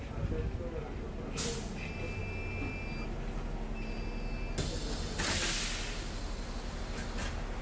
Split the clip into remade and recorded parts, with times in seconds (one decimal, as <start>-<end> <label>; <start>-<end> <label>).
0.0-7.6 recorded